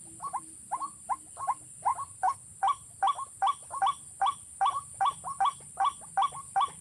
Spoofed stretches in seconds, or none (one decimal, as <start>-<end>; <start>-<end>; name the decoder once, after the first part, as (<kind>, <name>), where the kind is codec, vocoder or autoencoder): none